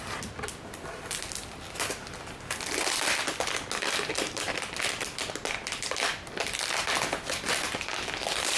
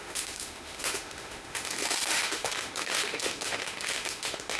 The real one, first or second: first